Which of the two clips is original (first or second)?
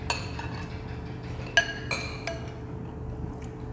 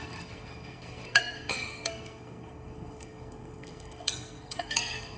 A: first